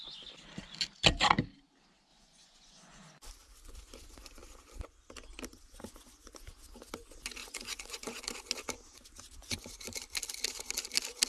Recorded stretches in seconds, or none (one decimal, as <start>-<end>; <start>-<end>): 0.0-2.1; 3.3-7.4; 8.2-11.3